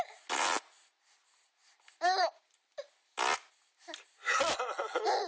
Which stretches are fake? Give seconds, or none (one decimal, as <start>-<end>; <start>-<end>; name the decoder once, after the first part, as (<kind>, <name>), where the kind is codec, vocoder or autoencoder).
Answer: none